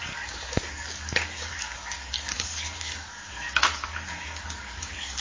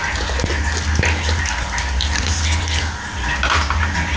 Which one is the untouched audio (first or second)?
second